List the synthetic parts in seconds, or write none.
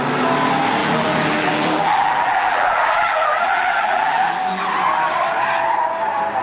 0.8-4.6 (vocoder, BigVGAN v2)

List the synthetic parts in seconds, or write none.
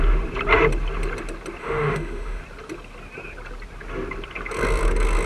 1.6-2.4 (autoencoder, DAC-VAE)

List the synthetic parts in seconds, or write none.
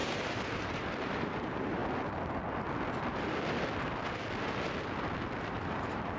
0.0-1.8 (vocoder, BigVGAN v2); 5.5-6.2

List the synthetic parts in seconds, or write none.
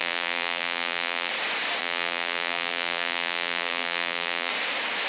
0.0-1.3 (vocoder, BigVGAN v2); 1.8-4.5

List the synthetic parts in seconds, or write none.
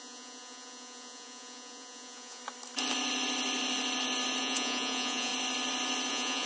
0.0-2.4 (vocoder, Vocos); 4.4-5.3; 6.1-6.5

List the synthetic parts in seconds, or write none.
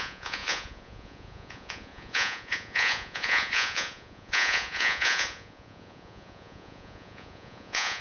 0.0-8.0 (vocoder, Vocos)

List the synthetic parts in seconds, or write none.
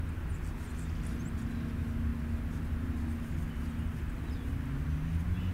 none